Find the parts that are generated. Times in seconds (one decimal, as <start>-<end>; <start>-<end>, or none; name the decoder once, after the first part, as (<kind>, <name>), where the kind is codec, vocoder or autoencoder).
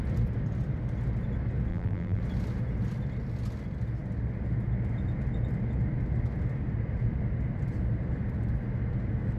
1.7-2.2 (vocoder, BigVGAN v2)